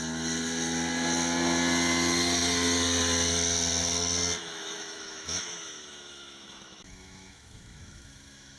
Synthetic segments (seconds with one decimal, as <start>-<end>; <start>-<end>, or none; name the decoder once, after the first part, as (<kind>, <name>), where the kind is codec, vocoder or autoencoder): 4.4-8.6 (autoencoder, DAC-VAE)